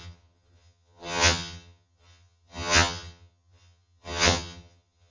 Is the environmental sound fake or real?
fake